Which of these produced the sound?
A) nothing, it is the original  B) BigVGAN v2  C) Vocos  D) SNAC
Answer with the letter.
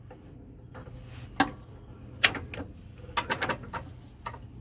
A